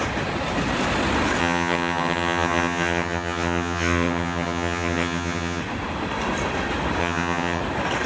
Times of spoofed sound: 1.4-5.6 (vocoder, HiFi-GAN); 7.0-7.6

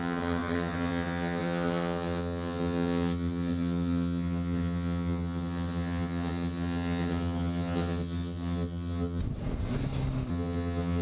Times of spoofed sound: 0.0-9.2 (vocoder, HiFi-GAN); 10.3-11.0

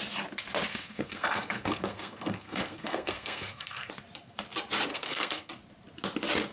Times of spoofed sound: 0.7-3.9 (codec, SNAC); 4.9-5.5

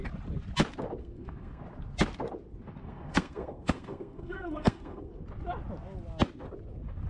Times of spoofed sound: 1.0-1.6 (codec, SNAC); 2.8-5.1

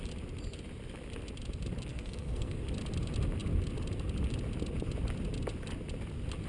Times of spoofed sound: 1.9-2.6 (codec, SNAC)